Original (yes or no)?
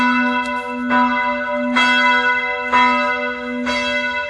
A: yes